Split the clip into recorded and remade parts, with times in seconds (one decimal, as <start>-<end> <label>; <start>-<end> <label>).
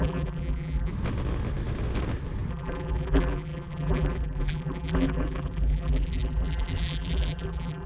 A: 0.0-0.9 remade; 0.9-2.5 recorded; 2.5-7.9 remade